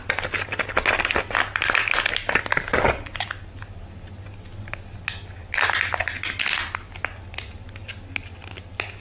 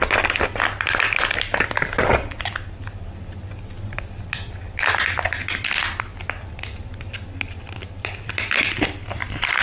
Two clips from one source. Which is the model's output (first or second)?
second